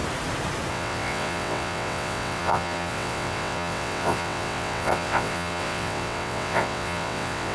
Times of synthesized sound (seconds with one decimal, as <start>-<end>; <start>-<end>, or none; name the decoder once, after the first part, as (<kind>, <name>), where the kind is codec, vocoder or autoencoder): 0.7-7.5 (vocoder, WaveNeXt)